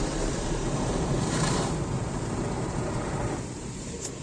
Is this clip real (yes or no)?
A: no